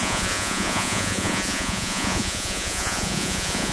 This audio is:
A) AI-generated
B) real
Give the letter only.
A